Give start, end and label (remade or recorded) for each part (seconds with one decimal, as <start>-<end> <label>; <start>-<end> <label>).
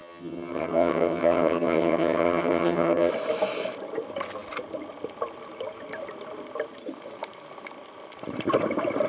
0.0-3.1 remade; 3.1-9.1 recorded